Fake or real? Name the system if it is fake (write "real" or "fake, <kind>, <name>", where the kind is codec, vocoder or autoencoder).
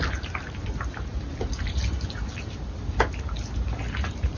real